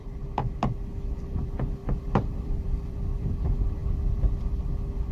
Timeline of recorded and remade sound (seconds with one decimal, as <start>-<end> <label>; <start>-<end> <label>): 0.0-3.8 remade; 3.8-5.1 recorded